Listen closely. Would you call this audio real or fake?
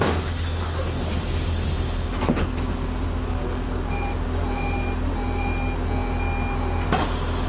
real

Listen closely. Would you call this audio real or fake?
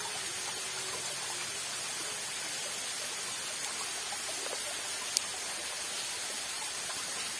real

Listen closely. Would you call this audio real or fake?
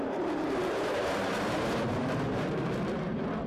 fake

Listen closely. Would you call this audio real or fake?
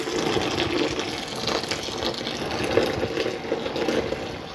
real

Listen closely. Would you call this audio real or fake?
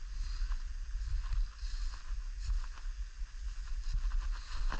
real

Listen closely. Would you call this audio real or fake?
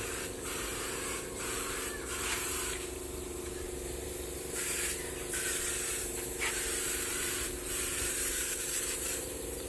fake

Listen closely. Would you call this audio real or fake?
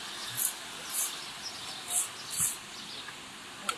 real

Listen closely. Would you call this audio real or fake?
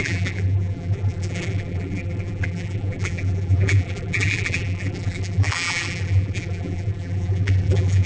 fake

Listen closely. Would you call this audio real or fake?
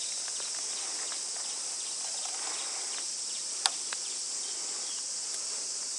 real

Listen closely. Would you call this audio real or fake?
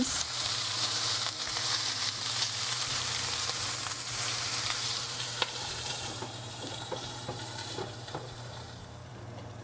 fake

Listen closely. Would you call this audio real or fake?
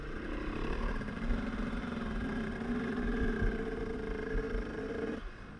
fake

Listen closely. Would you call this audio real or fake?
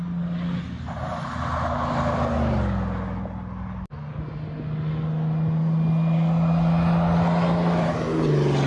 real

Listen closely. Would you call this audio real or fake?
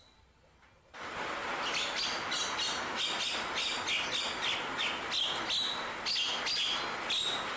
real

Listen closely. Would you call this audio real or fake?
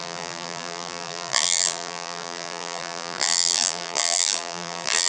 fake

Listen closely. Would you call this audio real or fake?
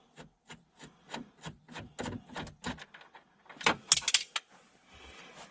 real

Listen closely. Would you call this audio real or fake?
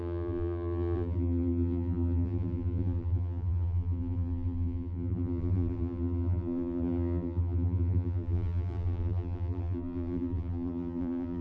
fake